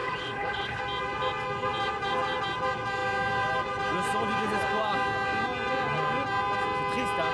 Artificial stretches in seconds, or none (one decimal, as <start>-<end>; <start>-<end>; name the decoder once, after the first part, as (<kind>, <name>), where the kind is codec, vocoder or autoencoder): 0.0-0.8 (codec, HILCodec)